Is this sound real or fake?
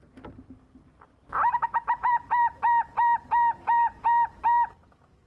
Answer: real